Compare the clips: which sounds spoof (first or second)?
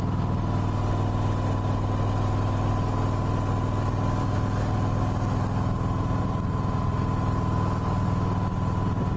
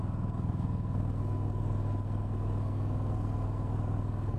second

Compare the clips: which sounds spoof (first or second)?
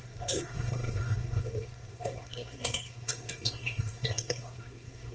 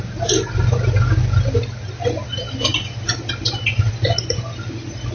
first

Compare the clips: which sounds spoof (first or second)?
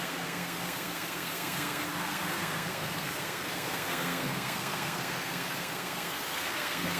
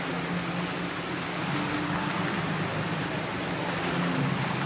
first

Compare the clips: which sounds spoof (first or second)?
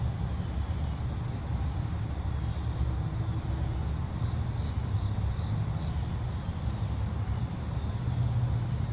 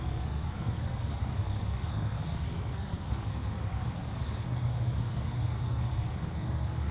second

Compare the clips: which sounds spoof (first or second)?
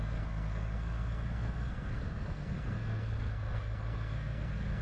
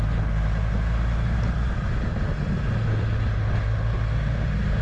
first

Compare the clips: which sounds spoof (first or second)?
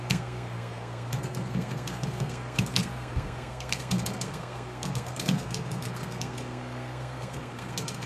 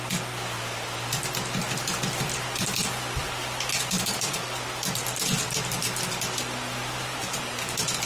first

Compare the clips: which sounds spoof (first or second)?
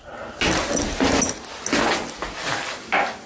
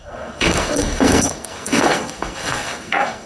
second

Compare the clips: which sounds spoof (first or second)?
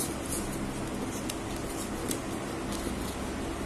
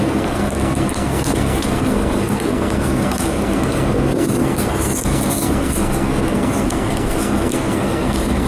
second